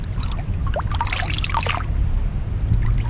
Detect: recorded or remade recorded